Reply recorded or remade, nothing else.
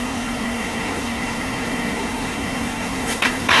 remade